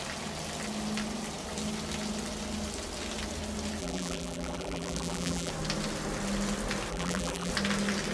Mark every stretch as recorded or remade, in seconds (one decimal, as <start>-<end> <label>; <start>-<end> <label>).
0.0-3.8 recorded; 3.8-5.5 remade; 5.5-6.9 recorded; 6.9-7.5 remade; 7.5-8.1 recorded